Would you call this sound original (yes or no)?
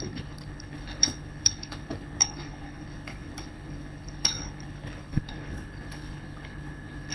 no